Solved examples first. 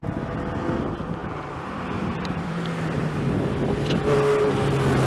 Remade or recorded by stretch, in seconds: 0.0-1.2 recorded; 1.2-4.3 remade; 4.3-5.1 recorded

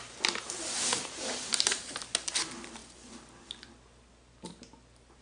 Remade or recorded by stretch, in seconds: 0.0-0.9 recorded; 0.9-2.0 remade; 2.0-2.8 recorded; 2.8-3.7 remade; 3.7-5.2 recorded

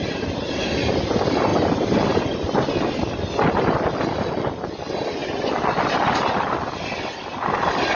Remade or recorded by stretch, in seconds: 0.0-5.2 recorded; 5.2-5.9 remade; 5.9-8.0 recorded